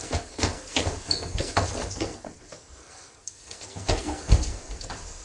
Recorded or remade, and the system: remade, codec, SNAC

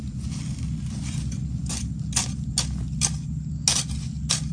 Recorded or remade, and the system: recorded